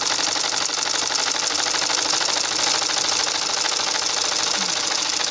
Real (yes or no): yes